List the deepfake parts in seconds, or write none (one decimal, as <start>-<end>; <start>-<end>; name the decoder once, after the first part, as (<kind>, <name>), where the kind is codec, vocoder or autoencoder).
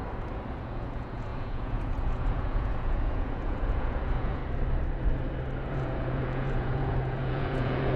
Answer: 0.6-4.4 (vocoder, Vocos); 5.7-8.0